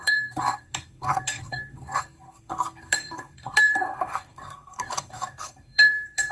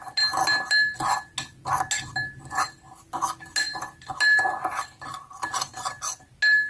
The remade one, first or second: first